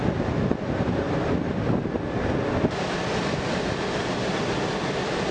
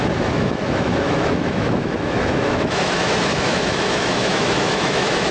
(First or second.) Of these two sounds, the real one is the first